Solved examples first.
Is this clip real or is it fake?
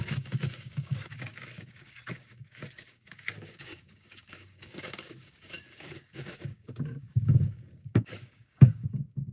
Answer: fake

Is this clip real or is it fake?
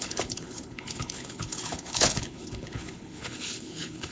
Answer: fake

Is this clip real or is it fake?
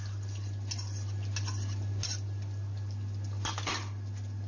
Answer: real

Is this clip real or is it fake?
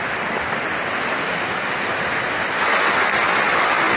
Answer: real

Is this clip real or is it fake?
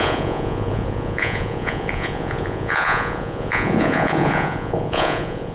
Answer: fake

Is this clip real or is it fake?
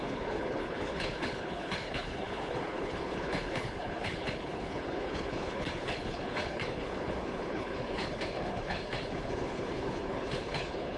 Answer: fake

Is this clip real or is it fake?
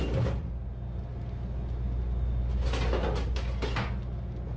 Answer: real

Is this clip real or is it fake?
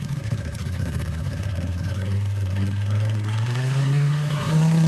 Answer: fake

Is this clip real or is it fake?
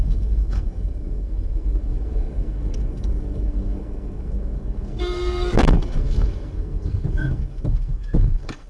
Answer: fake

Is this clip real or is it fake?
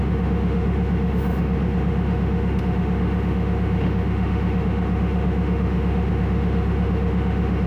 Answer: fake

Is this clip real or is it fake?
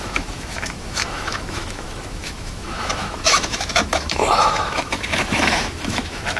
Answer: fake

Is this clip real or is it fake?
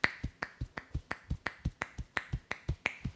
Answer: real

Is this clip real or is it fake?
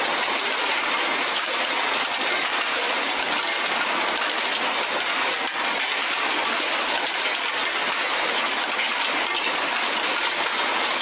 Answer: real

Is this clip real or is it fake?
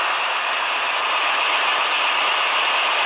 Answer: real